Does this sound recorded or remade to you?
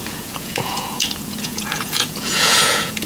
remade